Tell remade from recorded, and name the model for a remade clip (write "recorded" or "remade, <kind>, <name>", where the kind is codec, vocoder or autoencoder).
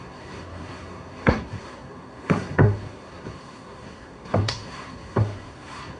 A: remade, codec, SNAC